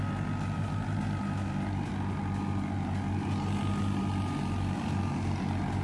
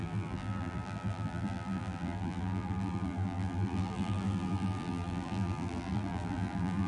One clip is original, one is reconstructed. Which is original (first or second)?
first